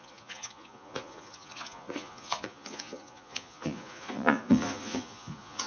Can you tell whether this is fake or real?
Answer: fake